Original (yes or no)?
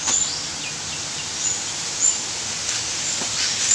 yes